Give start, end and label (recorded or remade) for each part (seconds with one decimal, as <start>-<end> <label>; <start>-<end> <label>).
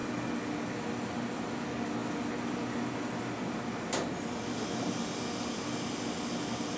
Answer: 0.0-6.8 recorded